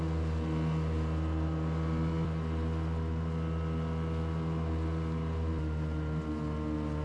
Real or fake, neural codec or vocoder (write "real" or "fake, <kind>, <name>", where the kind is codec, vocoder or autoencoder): real